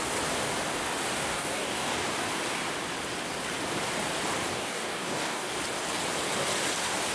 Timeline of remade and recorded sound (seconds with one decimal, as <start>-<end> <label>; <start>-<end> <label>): 0.0-1.3 recorded; 1.3-2.1 remade; 2.1-4.5 recorded; 4.5-5.5 remade; 5.5-7.1 recorded